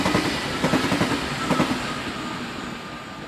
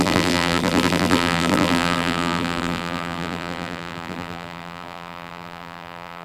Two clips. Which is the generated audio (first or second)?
second